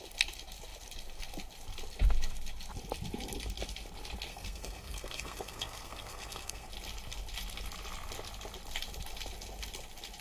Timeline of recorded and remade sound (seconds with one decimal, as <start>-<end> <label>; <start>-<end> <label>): 0.0-4.3 recorded; 4.3-6.7 remade; 6.7-10.2 recorded